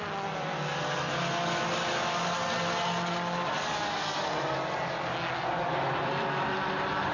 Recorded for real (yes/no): yes